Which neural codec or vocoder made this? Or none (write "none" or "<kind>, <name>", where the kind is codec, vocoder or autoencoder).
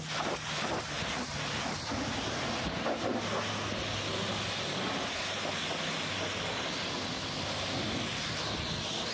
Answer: none